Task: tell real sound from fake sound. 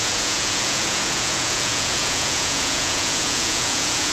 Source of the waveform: fake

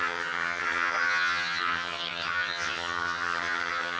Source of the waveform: fake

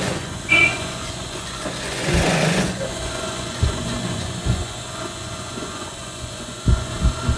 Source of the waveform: fake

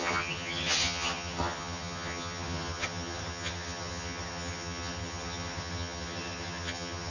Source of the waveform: fake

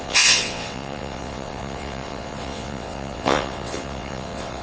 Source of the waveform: fake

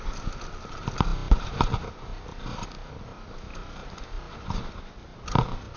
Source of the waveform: real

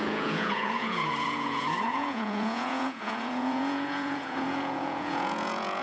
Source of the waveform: fake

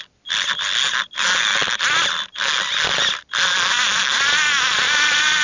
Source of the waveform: real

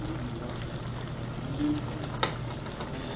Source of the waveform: real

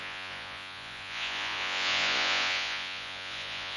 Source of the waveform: fake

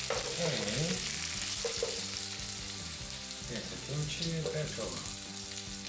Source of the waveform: real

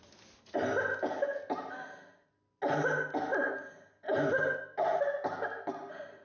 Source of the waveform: real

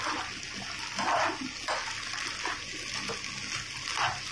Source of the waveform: real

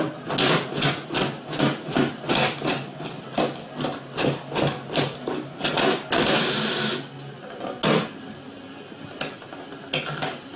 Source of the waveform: real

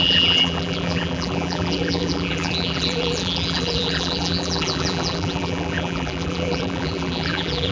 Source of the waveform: fake